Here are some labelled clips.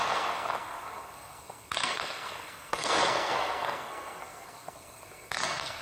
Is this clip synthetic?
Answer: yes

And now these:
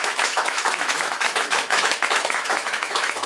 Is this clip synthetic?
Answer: yes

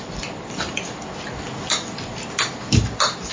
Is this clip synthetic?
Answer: no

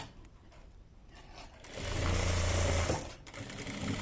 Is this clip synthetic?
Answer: yes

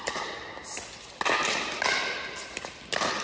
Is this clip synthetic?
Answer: no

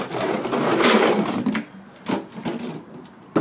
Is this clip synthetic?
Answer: no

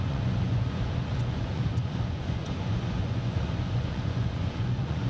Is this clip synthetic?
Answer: yes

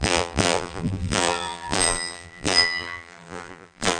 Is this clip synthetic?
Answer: yes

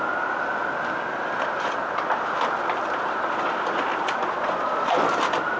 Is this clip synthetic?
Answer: no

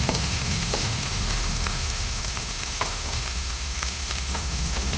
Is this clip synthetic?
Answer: yes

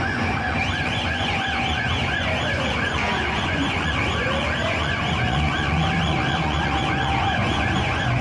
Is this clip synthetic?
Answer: yes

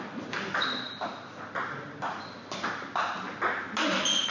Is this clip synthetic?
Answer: no